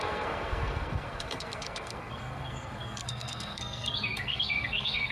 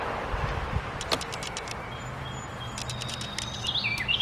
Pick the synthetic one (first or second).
first